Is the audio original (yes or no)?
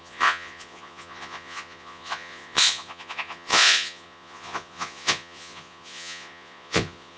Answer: no